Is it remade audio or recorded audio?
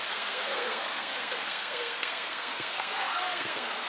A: remade